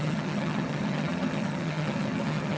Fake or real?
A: fake